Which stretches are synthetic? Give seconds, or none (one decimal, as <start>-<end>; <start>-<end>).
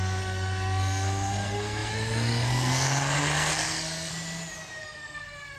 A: 0.0-4.1; 4.8-5.6